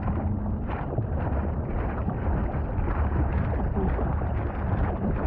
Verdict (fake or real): real